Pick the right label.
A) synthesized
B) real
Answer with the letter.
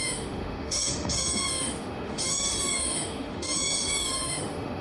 A